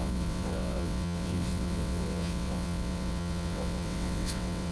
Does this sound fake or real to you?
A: fake